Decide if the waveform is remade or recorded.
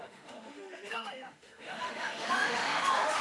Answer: remade